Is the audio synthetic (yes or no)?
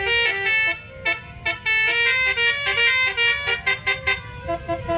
no